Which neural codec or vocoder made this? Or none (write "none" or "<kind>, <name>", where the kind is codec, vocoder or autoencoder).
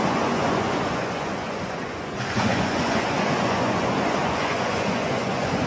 vocoder, Vocos